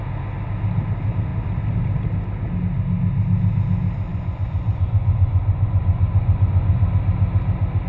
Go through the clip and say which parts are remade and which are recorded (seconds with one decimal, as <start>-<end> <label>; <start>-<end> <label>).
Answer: 0.0-4.1 recorded; 4.1-6.9 remade; 6.9-7.9 recorded